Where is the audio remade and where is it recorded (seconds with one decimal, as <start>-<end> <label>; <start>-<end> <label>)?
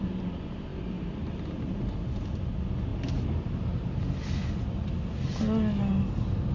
0.0-6.5 recorded